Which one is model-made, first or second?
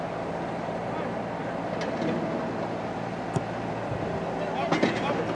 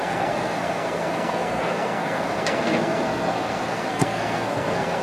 second